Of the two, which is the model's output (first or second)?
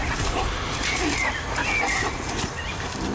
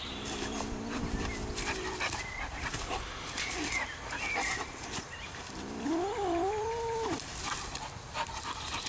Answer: second